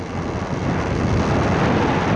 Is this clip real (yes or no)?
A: yes